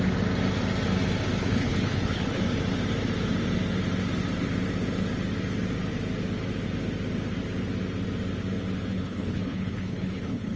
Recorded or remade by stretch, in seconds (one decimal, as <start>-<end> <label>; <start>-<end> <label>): 0.0-1.4 recorded; 1.4-2.4 remade; 2.4-8.9 recorded; 8.9-10.6 remade